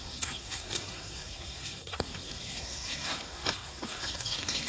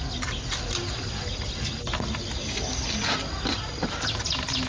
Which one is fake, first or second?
first